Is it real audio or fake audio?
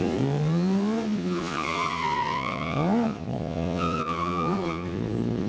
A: fake